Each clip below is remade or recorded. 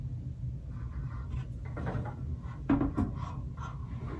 recorded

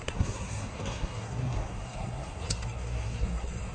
remade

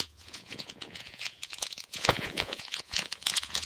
remade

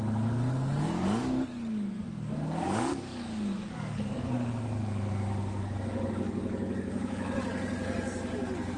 remade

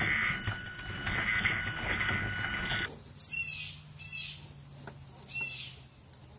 recorded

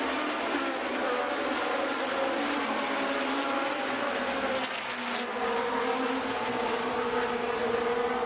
recorded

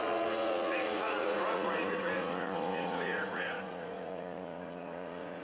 remade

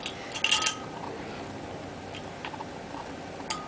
recorded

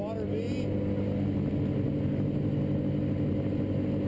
recorded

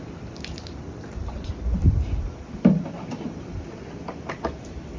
remade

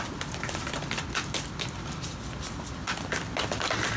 recorded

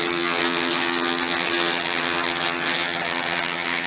remade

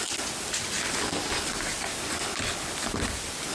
remade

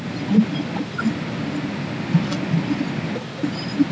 recorded